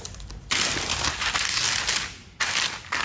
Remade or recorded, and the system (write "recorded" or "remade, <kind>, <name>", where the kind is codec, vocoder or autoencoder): recorded